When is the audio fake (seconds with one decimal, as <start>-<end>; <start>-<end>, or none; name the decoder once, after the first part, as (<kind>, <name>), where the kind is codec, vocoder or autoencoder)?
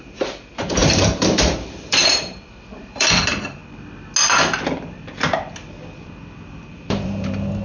0.0-3.6 (vocoder, BigVGAN v2); 6.5-7.6